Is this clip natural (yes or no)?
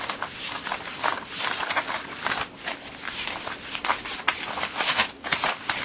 yes